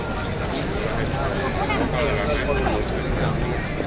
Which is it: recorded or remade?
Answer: recorded